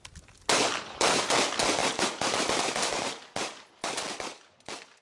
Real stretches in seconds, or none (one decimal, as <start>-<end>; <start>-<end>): 0.0-5.0